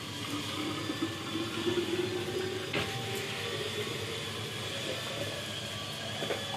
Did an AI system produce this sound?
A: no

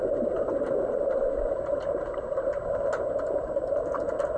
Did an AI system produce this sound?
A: no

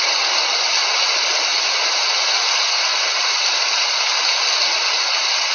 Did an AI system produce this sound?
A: no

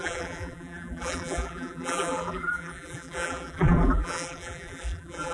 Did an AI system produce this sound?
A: yes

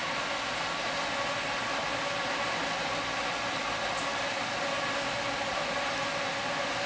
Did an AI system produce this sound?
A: no